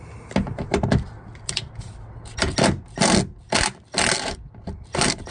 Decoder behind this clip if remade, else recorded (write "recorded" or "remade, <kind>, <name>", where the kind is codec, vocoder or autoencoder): recorded